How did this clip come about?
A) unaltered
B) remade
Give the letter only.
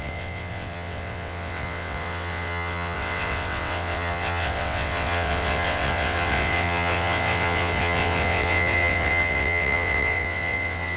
B